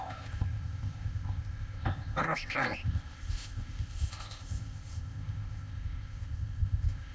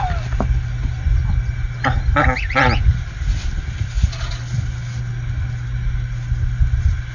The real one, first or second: second